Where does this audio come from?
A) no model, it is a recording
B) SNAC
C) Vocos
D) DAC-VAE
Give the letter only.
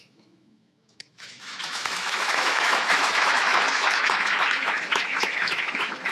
D